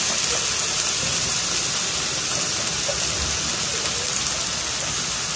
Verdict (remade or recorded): recorded